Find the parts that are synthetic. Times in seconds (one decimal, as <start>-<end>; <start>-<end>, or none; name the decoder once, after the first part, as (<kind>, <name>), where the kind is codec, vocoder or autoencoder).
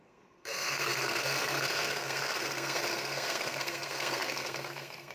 0.0-5.1 (codec, SNAC)